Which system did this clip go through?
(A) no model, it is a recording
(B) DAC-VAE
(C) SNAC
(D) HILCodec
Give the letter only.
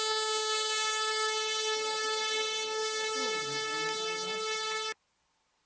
A